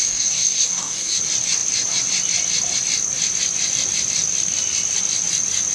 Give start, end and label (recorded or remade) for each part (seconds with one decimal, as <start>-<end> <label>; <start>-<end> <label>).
0.0-1.2 remade; 1.2-5.7 recorded

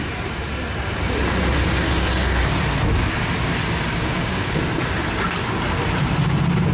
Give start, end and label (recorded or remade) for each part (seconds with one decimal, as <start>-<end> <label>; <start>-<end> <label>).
0.0-3.9 recorded; 3.9-4.6 remade; 4.6-6.7 recorded